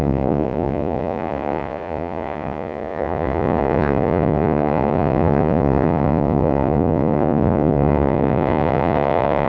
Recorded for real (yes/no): no